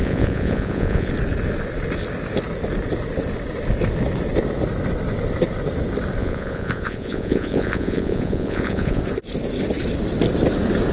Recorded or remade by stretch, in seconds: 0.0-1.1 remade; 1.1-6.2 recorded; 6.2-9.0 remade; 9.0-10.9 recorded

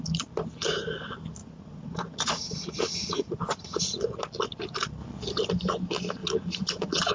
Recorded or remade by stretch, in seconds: 0.0-1.4 recorded; 1.4-4.0 remade; 4.0-6.2 recorded; 6.2-7.1 remade

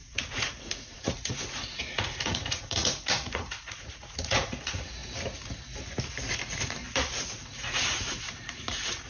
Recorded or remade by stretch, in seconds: 0.0-5.0 remade; 5.0-6.3 recorded; 6.3-6.8 remade; 6.8-7.3 recorded; 7.3-9.1 remade

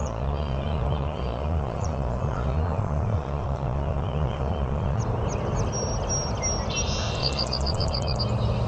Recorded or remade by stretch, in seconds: 0.0-5.0 remade; 5.0-7.2 recorded; 7.2-8.2 remade; 8.2-8.7 recorded

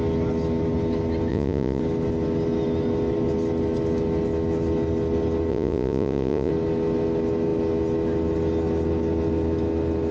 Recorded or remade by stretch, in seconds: 0.0-1.3 recorded; 1.3-1.8 remade; 1.8-5.5 recorded; 5.5-6.5 remade; 6.5-10.1 recorded

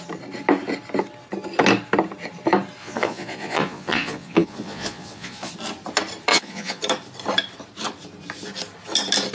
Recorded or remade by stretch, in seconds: 0.0-2.8 recorded; 2.8-5.5 remade; 5.5-6.3 recorded; 6.3-6.8 remade; 6.8-9.3 recorded

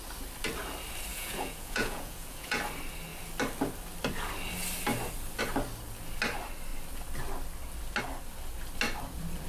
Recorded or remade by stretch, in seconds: 0.0-1.1 recorded; 1.1-2.6 remade; 2.6-9.5 recorded